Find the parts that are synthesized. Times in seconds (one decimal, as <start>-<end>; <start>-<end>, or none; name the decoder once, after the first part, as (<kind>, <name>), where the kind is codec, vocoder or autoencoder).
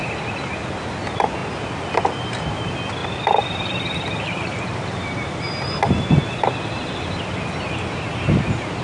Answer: 3.0-6.1 (vocoder, BigVGAN v2)